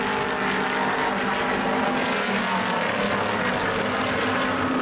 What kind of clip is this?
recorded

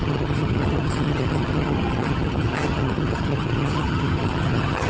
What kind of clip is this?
remade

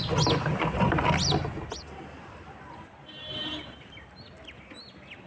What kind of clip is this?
recorded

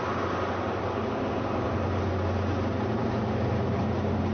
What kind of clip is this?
recorded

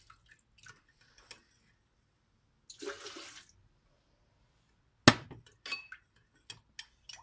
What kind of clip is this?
recorded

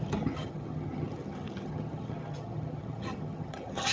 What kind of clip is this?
remade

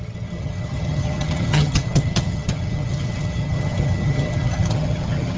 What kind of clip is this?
remade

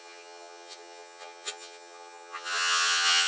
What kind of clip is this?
remade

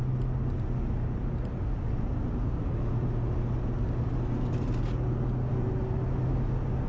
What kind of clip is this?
recorded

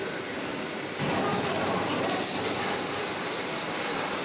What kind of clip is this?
recorded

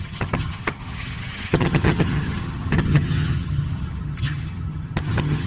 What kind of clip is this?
remade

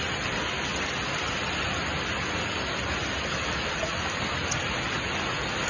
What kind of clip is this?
recorded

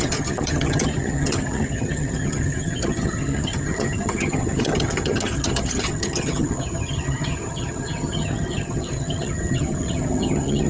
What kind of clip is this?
remade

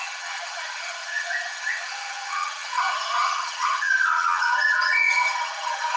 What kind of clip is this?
remade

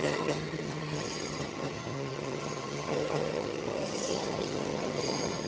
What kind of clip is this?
remade